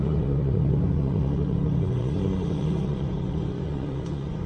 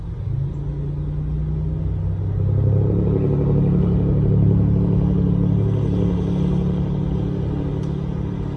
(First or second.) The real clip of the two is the second